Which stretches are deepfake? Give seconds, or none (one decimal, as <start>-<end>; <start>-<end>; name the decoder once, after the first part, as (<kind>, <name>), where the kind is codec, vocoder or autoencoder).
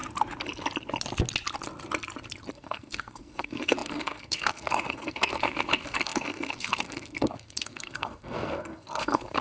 2.5-9.4 (codec, SNAC)